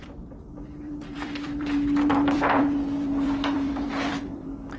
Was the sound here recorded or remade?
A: remade